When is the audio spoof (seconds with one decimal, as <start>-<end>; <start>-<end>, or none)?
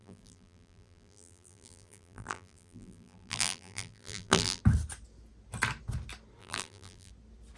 0.0-4.6; 6.4-7.1